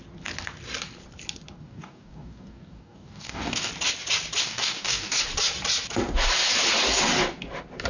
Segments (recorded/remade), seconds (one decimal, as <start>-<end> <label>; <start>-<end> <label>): 0.0-1.6 recorded; 1.6-3.7 remade; 3.7-4.4 recorded; 4.4-5.2 remade; 5.2-7.9 recorded